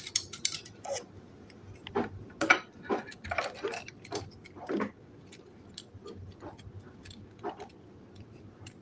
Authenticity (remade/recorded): recorded